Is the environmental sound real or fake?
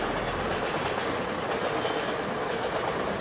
real